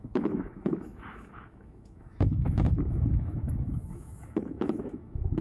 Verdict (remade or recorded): remade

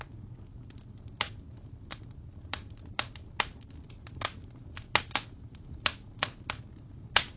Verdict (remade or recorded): recorded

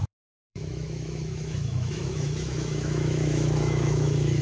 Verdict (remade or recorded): remade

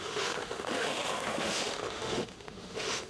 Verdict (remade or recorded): remade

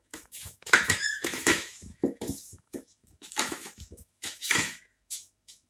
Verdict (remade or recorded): remade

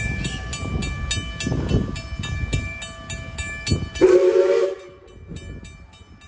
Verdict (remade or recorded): recorded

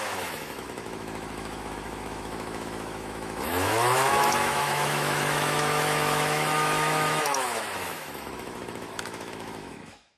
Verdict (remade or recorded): remade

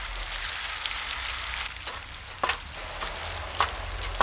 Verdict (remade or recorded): recorded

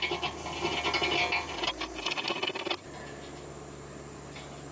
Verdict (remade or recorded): recorded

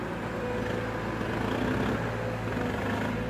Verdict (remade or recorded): recorded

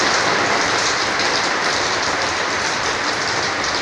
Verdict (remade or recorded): recorded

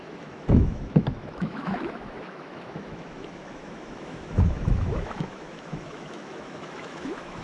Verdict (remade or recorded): remade